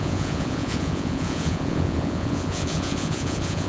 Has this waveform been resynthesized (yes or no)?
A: yes